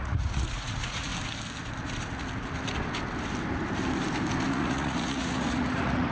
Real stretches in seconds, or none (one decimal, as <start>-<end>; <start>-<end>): 1.1-4.5

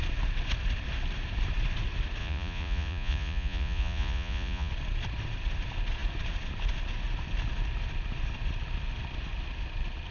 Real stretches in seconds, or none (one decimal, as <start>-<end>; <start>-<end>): 0.0-2.2; 4.7-10.1

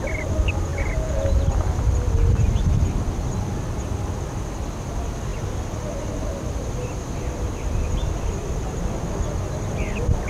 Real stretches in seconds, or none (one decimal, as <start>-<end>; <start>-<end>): 0.0-0.7; 1.2-10.3

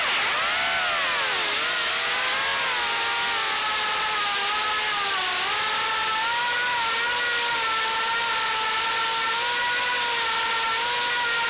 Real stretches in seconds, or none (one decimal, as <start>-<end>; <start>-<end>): 0.0-11.5

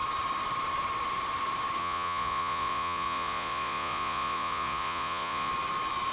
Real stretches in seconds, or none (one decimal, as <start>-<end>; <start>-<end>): 0.0-1.8; 5.5-6.1

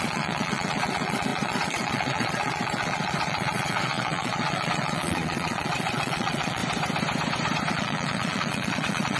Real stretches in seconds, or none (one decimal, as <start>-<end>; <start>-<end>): 6.6-7.7

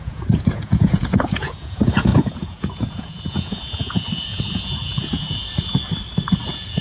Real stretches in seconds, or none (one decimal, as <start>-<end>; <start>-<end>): 5.4-6.3